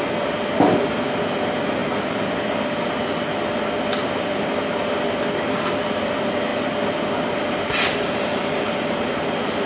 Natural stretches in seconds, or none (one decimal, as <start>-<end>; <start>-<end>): 0.0-1.8; 2.5-4.0; 4.5-6.5